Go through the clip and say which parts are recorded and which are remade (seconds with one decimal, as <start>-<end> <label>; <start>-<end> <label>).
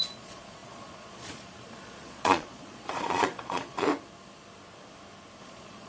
0.0-3.9 remade; 3.9-5.4 recorded; 5.4-5.9 remade